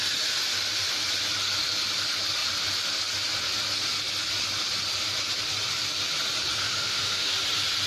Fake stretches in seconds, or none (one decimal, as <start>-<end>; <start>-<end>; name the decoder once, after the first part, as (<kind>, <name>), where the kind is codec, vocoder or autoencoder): 6.6-7.3 (autoencoder, DAC-VAE)